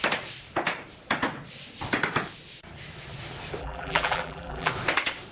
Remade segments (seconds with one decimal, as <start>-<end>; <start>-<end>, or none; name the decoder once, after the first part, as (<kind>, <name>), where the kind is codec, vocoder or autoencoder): 3.6-4.7 (vocoder, BigVGAN v2)